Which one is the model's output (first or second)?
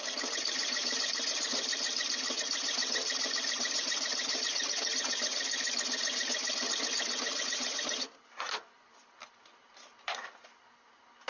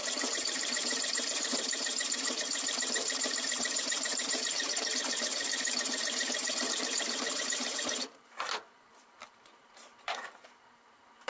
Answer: second